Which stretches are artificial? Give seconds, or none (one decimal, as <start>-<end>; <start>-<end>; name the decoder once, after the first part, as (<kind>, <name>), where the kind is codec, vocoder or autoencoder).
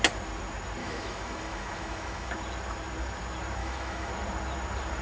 0.8-2.3 (autoencoder, DAC-VAE); 3.6-4.1